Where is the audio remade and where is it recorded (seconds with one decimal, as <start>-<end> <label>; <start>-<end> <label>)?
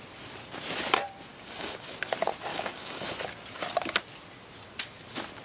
0.0-1.3 recorded; 1.3-1.9 remade; 1.9-2.5 recorded; 2.5-3.1 remade; 3.1-5.4 recorded